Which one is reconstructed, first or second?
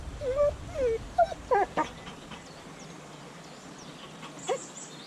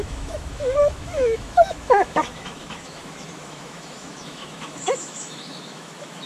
second